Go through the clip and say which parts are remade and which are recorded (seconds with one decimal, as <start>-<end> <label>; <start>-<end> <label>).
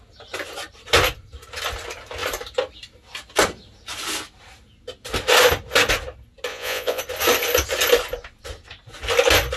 0.0-6.5 recorded; 6.5-7.0 remade; 7.0-9.6 recorded